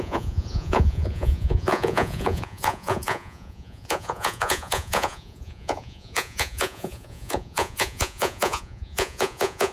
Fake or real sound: fake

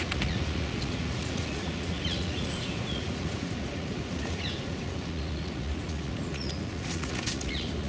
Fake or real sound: fake